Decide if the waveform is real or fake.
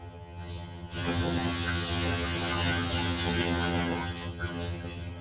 fake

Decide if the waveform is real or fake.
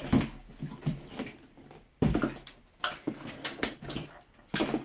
real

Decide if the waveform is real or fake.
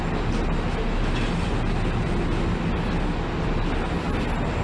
real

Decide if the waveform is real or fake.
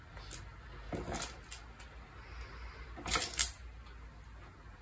real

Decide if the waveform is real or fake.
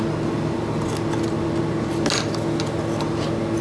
real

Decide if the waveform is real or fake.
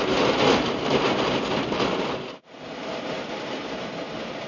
fake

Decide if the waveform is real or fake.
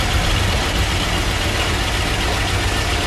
real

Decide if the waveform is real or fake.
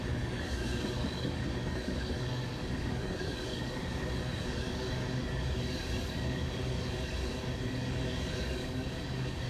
fake